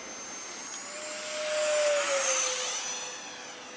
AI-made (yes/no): no